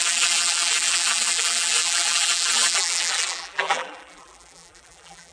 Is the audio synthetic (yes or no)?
yes